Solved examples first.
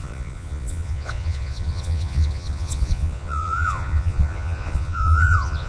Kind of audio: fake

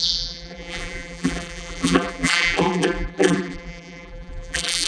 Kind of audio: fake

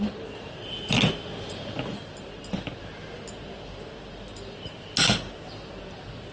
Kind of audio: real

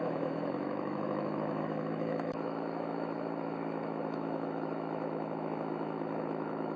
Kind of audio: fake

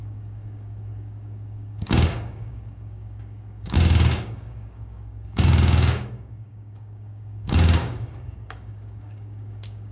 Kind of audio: fake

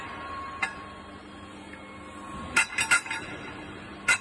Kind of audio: real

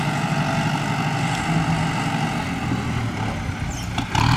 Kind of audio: real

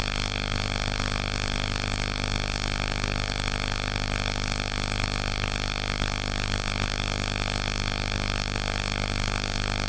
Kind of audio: fake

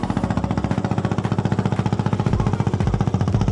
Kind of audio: real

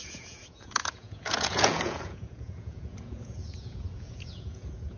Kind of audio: fake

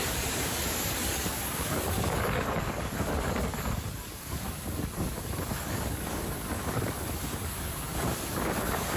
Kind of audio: fake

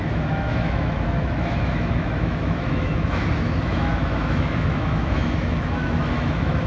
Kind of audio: fake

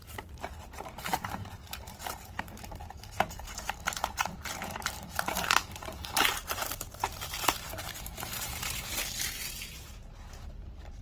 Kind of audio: fake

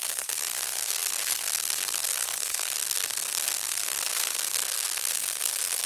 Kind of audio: fake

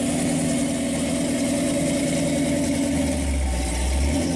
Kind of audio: real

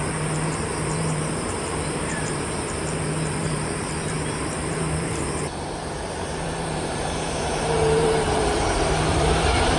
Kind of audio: fake